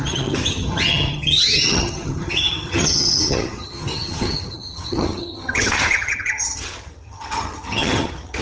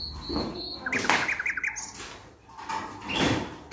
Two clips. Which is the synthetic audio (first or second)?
first